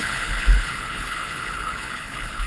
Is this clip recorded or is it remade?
remade